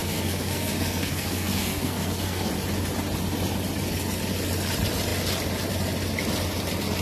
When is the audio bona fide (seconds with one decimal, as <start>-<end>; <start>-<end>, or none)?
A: 2.5-7.0